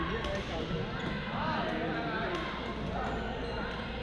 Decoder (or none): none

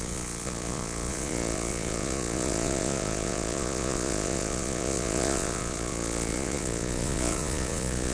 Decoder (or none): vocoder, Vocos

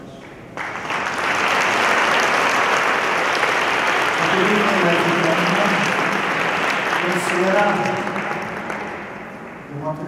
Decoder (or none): none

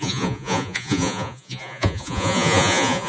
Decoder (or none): vocoder, Vocos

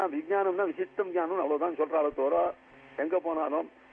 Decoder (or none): none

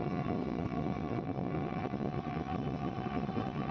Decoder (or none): vocoder, Vocos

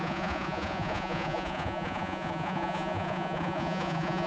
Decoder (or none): vocoder, Vocos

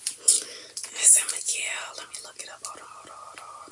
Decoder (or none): none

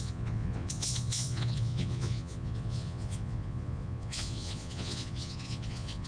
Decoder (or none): vocoder, Vocos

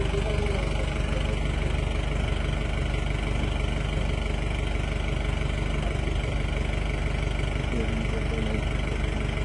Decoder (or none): none